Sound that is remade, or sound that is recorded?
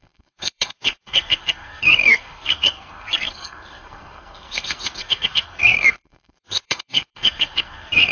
remade